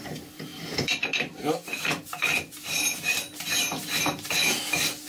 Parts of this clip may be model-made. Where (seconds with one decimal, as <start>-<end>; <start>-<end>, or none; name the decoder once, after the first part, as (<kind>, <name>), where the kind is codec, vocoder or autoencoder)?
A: 0.0-2.0 (vocoder, BigVGAN v2)